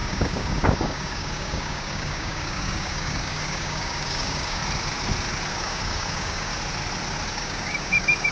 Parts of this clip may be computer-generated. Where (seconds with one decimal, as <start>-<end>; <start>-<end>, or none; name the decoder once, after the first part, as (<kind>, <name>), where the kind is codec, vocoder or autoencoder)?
0.0-4.6 (codec, DAC); 5.5-6.5; 7.3-8.3